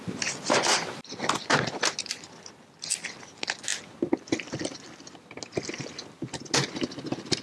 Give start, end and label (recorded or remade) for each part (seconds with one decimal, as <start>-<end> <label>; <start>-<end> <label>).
0.0-7.4 recorded